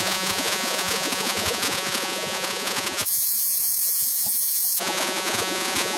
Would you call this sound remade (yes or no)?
yes